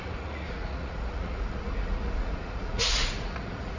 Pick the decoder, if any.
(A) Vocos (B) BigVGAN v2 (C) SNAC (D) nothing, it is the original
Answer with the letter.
A